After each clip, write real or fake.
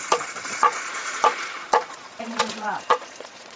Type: fake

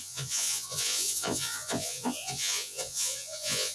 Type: fake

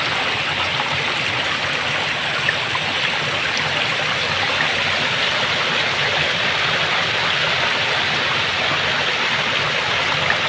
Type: real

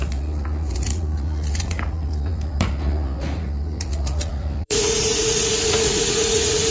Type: fake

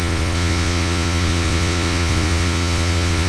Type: fake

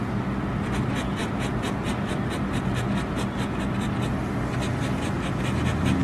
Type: real